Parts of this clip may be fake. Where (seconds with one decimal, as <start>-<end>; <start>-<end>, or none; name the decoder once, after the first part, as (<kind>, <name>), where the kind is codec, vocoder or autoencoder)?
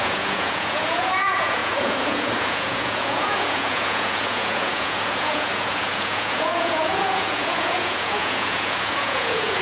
0.0-9.6 (vocoder, Vocos)